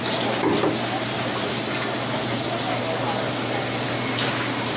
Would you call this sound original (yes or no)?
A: yes